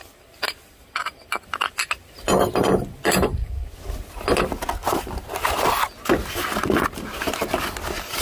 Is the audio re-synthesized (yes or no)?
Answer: no